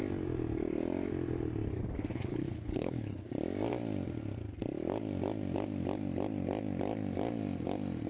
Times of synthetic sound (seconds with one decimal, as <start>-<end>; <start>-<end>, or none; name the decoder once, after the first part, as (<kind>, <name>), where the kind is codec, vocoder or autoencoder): 2.1-3.3 (codec, HILCodec)